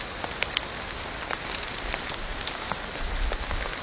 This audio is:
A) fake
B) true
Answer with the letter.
B